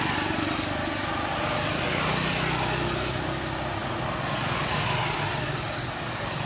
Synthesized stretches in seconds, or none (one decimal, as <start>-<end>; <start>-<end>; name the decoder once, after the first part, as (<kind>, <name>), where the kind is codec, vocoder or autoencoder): none